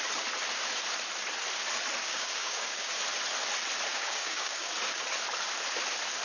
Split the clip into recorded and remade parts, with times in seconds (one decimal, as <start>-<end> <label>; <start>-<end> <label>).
0.0-2.0 recorded; 2.0-2.9 remade; 2.9-3.9 recorded; 3.9-4.7 remade; 4.7-6.2 recorded